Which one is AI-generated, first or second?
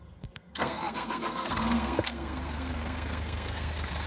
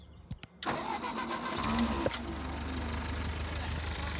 first